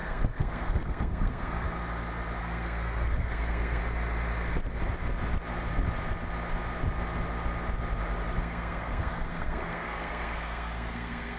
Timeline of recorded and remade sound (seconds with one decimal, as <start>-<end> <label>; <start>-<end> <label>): 0.0-1.8 remade; 1.8-2.4 recorded; 2.4-3.8 remade; 3.8-8.4 recorded; 8.4-11.4 remade